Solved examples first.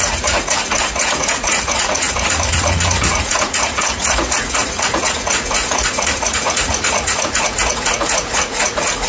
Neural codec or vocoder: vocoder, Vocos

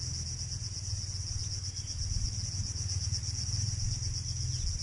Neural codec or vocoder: none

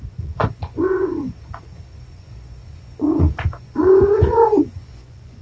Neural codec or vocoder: vocoder, Vocos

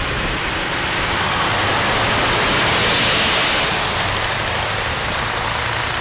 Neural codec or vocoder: none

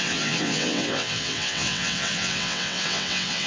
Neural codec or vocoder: vocoder, WaveNeXt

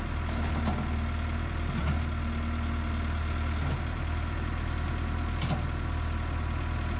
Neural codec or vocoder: none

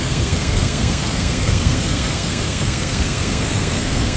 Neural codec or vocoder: codec, SNAC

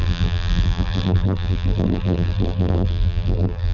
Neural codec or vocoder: vocoder, BigVGAN v2